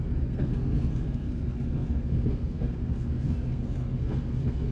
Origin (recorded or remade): remade